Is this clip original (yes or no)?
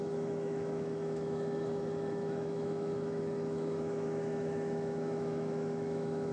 no